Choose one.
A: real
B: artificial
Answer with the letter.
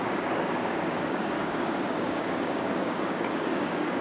B